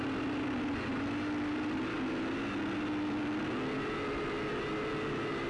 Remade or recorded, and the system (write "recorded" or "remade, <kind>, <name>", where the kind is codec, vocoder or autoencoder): recorded